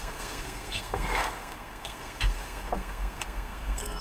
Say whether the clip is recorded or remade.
remade